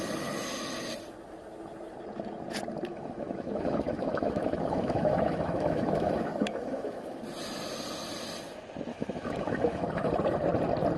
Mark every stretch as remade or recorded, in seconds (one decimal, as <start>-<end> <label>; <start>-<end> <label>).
0.0-2.9 recorded; 2.9-7.2 remade; 7.2-8.9 recorded; 8.9-10.1 remade; 10.1-11.0 recorded